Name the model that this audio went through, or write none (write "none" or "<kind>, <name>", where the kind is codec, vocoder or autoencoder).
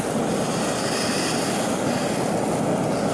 none